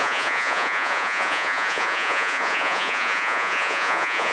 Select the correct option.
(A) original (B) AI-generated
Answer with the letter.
B